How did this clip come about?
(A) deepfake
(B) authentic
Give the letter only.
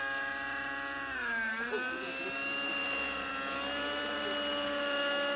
B